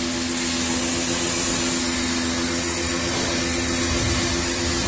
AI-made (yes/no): no